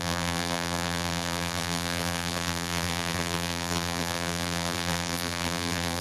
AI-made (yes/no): yes